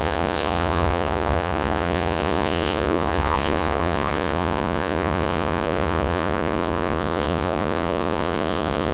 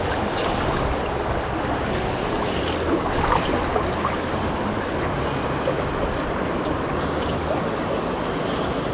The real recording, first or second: second